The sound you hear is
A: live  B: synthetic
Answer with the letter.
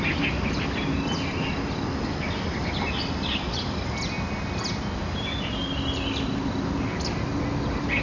A